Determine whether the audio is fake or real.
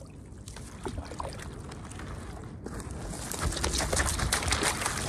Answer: real